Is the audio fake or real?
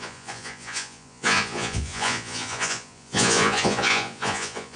fake